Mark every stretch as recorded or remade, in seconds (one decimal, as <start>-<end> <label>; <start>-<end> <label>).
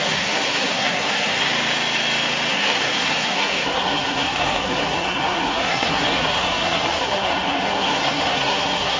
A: 0.0-1.5 remade; 1.5-2.5 recorded; 2.5-9.0 remade